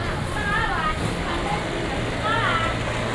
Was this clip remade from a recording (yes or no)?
no